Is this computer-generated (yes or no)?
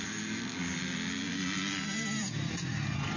no